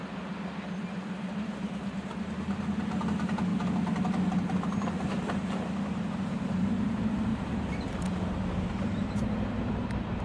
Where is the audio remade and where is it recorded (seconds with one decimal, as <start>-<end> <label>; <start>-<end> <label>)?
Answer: 0.0-0.7 recorded; 0.7-10.2 remade